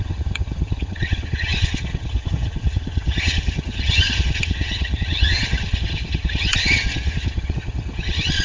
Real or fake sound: fake